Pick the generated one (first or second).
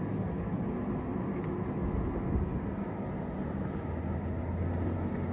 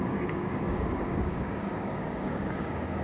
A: second